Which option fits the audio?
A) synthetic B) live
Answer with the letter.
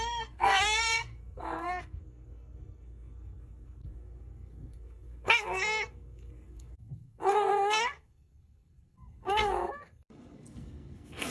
A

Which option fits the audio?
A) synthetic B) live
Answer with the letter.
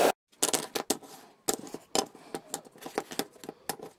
B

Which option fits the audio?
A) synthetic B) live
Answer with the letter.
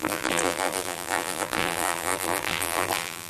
A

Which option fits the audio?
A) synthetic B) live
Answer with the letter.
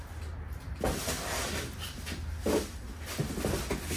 B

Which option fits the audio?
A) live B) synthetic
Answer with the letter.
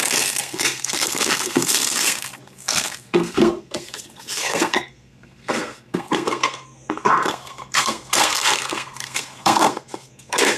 B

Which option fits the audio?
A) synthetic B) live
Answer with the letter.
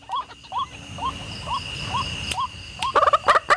B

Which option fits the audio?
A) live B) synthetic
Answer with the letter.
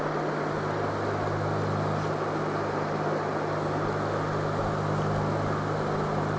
A